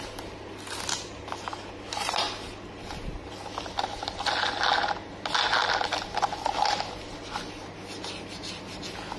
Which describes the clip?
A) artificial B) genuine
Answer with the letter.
B